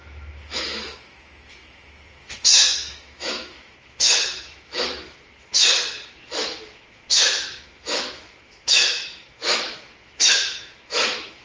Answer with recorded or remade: remade